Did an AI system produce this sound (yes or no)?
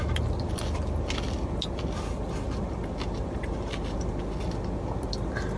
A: no